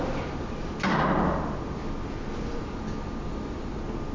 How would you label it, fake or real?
real